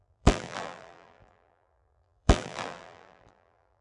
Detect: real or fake fake